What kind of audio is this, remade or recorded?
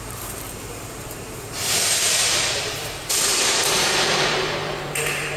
remade